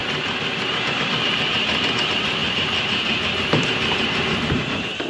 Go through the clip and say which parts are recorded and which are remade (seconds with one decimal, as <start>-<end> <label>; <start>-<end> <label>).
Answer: 0.0-2.4 remade; 2.4-3.6 recorded; 3.6-5.1 remade